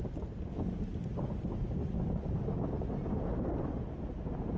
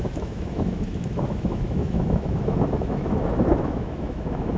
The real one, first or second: first